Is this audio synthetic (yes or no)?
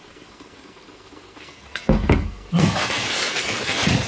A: yes